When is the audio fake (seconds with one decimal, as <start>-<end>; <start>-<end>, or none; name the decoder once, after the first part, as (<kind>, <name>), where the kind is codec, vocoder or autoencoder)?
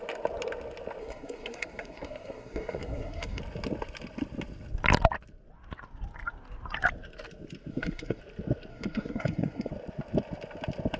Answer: 1.0-3.4 (codec, SNAC); 7.7-8.2; 8.7-9.7